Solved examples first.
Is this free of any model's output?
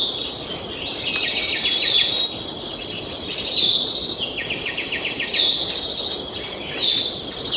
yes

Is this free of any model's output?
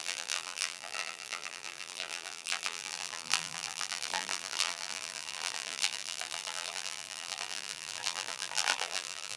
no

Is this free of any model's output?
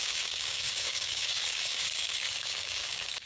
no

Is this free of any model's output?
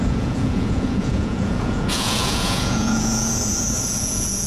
no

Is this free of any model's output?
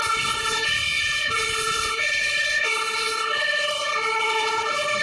no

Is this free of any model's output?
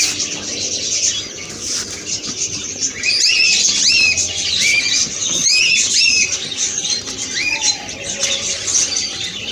yes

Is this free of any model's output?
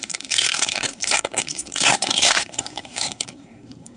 no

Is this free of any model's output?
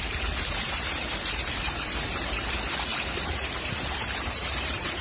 no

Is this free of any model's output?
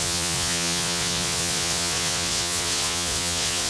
no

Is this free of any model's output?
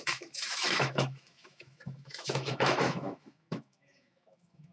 no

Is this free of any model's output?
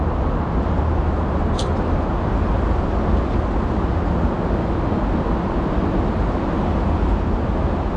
yes